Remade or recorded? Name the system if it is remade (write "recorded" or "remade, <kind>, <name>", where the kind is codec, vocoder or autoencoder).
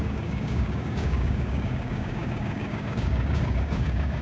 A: remade, codec, DAC